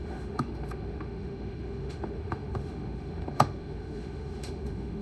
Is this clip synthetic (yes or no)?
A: yes